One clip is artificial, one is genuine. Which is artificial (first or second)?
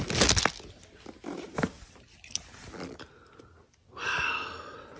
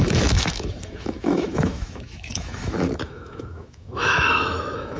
second